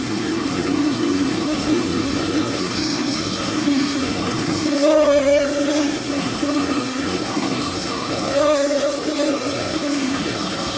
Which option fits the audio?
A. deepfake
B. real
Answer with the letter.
A